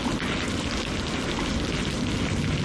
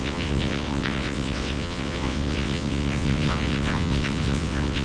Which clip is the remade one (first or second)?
second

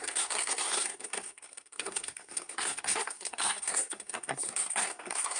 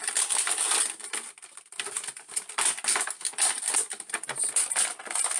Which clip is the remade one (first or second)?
first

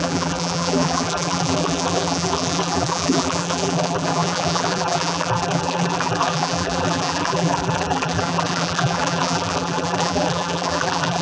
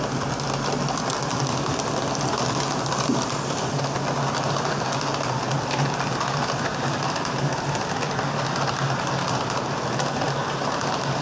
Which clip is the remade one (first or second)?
first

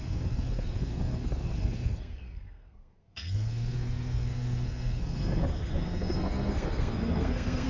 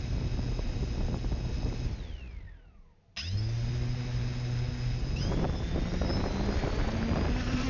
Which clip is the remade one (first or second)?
first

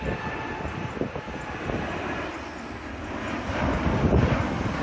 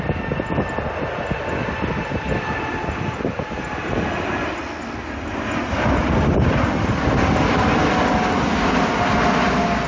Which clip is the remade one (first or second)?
first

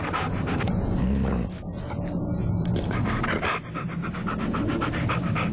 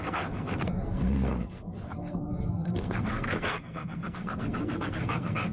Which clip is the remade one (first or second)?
second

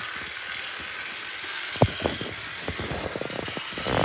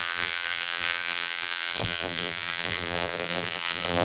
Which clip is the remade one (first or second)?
second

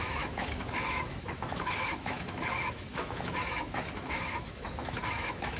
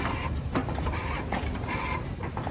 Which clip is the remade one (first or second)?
first